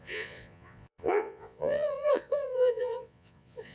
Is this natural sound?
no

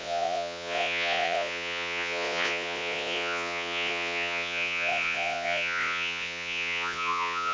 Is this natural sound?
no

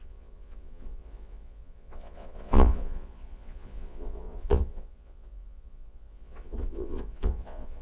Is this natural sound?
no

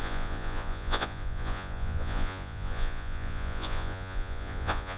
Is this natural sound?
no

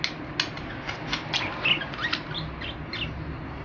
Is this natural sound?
yes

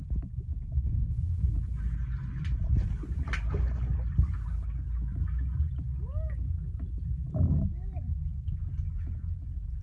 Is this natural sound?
yes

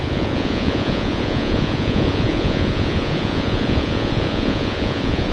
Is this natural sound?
no